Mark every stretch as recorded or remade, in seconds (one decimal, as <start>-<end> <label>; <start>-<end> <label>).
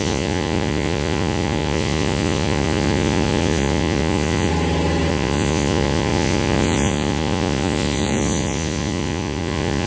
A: 0.0-4.5 remade; 4.5-5.1 recorded; 5.1-9.9 remade